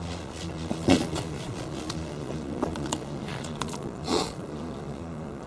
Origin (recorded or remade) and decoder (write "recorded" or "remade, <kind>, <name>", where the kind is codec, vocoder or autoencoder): remade, vocoder, Vocos